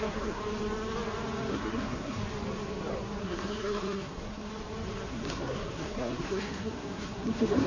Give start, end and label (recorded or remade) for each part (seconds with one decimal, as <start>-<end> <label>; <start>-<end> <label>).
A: 0.0-0.4 remade; 0.4-1.5 recorded; 1.5-2.2 remade; 2.2-3.2 recorded; 3.2-4.5 remade; 4.5-5.1 recorded; 5.1-7.7 remade